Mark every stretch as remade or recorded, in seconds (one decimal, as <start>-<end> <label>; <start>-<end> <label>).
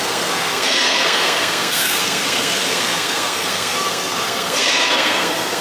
0.0-5.6 remade